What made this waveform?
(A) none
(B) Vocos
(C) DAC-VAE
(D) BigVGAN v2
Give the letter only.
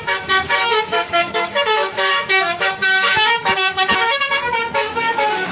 C